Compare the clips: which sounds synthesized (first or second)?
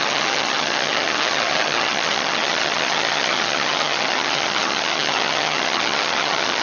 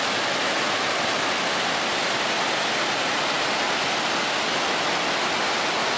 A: first